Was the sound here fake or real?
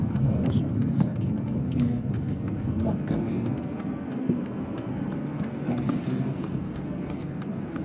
fake